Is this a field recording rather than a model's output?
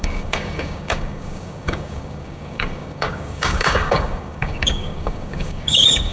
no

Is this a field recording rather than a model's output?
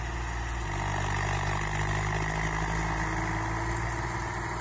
yes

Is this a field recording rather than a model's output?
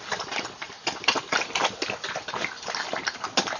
yes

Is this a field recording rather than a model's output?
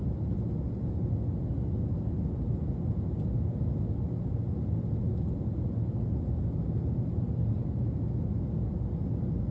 yes